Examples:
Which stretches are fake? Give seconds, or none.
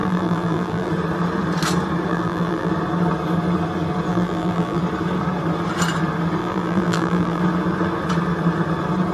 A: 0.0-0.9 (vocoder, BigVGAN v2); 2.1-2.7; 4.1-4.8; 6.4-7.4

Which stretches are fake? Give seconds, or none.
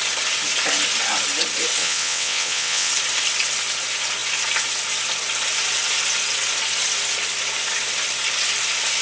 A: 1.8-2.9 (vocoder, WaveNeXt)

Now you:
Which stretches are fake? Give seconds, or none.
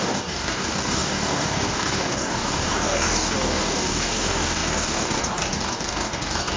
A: 0.0-6.6 (codec, DAC)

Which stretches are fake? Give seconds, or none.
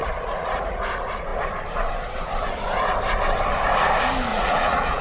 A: 0.0-0.8 (vocoder, Vocos); 4.3-5.0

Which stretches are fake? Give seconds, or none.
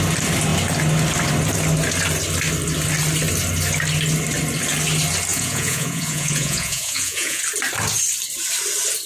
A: 5.3-7.4 (vocoder, Vocos)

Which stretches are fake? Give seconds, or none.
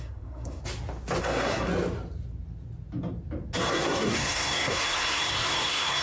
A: 0.0-0.6 (codec, SNAC); 1.2-1.7; 3.7-6.0